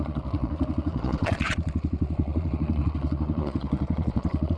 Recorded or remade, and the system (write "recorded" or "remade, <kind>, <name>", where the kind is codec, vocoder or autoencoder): remade, vocoder, Vocos